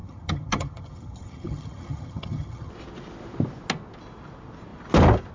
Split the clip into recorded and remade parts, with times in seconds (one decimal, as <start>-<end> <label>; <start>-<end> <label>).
0.0-2.7 remade; 2.7-5.3 recorded